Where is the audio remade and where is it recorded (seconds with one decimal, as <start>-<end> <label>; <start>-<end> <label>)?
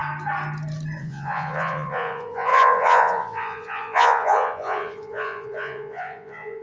0.0-1.0 recorded; 1.0-6.6 remade